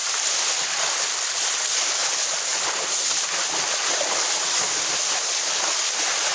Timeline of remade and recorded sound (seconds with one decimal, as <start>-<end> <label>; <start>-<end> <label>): 0.0-6.3 recorded